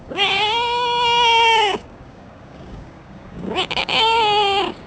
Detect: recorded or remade remade